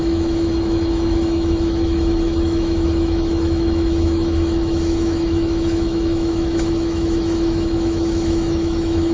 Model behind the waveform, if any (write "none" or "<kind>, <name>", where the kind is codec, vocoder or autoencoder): autoencoder, DAC-VAE